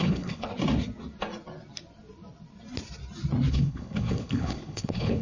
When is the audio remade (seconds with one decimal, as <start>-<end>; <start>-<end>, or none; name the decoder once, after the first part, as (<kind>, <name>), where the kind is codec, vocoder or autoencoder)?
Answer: 0.0-0.5 (codec, HILCodec); 3.5-5.2